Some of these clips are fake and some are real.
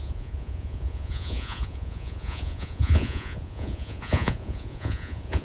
fake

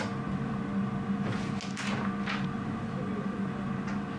real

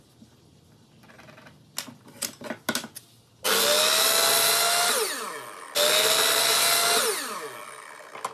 real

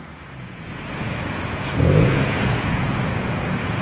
fake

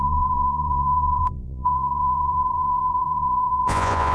fake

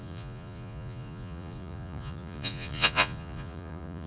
fake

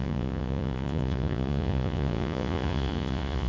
fake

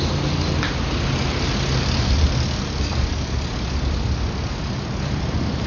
real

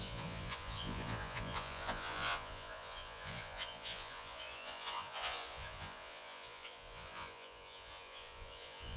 fake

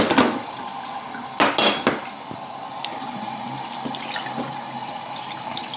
real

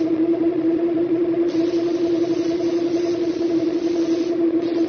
fake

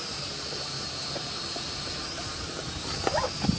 real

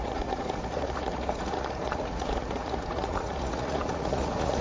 fake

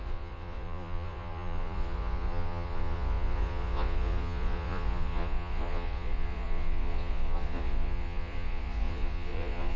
fake